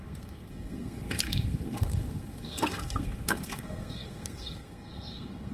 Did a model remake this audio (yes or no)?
yes